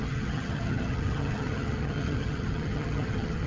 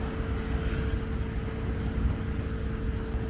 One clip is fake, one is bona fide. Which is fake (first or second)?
first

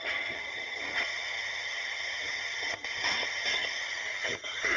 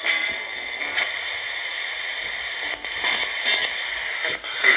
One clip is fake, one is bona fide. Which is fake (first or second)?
first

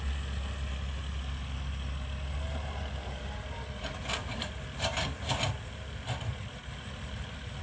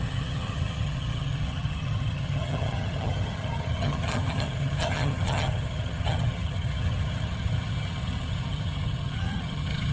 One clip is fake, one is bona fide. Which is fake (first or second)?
second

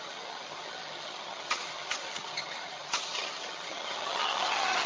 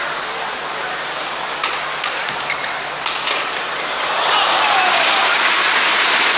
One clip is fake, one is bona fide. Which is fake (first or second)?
first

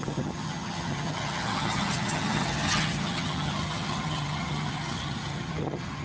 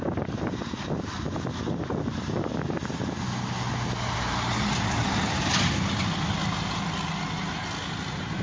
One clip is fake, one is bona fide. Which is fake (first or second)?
first